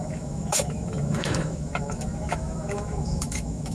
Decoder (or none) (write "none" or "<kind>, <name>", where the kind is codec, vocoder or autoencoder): autoencoder, DAC-VAE